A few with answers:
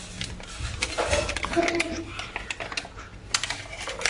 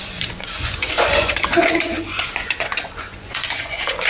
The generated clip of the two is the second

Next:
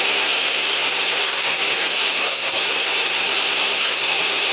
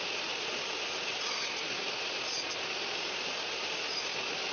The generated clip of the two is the first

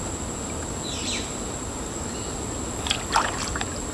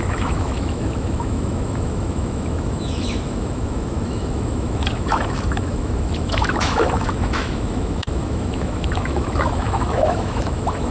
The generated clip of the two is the second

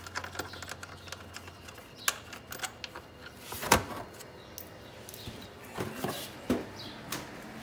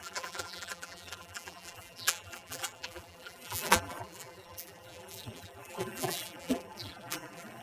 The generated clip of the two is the second